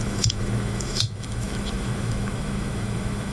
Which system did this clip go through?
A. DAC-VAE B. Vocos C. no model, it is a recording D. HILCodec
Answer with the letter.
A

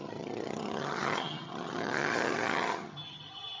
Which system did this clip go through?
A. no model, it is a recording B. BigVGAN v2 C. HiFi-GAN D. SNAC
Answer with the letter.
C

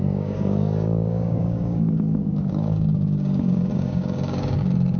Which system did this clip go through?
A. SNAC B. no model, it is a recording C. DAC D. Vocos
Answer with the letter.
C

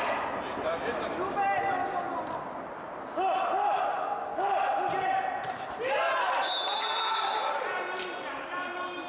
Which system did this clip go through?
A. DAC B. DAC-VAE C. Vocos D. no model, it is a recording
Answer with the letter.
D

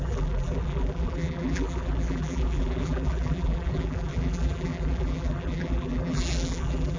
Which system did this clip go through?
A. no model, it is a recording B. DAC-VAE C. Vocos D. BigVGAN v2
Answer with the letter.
D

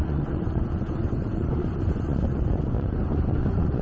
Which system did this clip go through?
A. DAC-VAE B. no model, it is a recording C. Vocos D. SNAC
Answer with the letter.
C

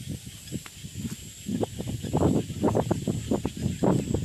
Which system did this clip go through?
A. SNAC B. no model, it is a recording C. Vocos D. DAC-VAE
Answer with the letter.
B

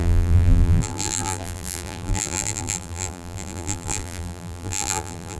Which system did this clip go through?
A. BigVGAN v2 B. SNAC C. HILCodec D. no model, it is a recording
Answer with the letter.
A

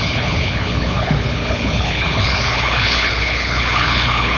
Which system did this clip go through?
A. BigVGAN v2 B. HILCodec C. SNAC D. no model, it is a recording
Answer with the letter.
B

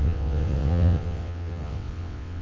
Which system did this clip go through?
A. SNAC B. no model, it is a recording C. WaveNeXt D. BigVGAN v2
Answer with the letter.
C